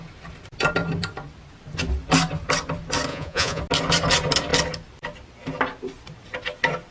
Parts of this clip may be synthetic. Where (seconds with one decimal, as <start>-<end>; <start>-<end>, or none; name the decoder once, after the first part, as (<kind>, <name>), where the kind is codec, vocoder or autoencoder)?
3.1-3.6 (vocoder, Vocos)